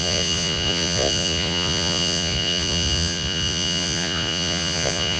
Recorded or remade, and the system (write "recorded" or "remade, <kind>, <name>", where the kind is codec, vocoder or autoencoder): remade, vocoder, Vocos